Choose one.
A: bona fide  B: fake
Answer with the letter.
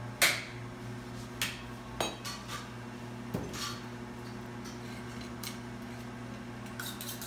A